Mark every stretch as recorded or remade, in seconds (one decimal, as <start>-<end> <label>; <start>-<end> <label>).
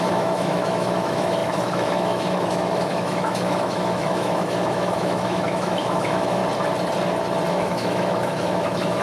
0.0-6.4 remade; 6.4-7.5 recorded; 7.5-9.0 remade